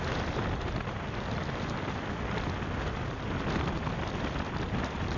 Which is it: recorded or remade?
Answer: recorded